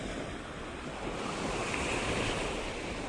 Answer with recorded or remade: recorded